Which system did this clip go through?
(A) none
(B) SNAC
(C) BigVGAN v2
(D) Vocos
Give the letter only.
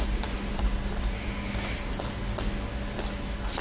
A